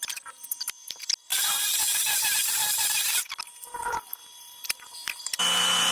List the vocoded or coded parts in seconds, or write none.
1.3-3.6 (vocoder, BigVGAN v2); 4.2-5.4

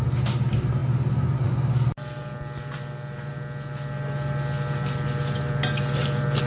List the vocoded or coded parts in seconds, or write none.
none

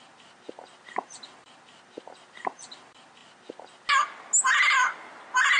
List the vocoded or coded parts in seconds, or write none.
none

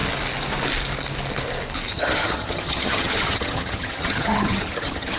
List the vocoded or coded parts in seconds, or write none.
1.9-5.2 (vocoder, HiFi-GAN)

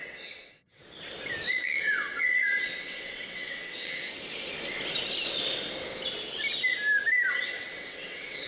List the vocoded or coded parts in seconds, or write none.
0.0-0.8 (vocoder, WaveNeXt); 1.5-4.1; 7.3-8.5

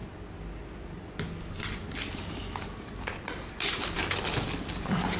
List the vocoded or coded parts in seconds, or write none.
3.1-5.2 (vocoder, BigVGAN v2)

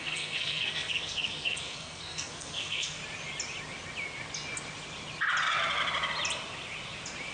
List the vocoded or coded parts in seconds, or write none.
0.0-3.0 (codec, SNAC)

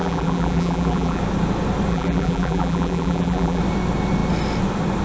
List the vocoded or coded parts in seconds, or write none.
0.0-1.2 (vocoder, BigVGAN v2); 1.9-3.6